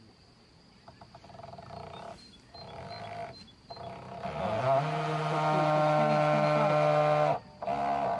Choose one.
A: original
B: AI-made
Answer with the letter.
A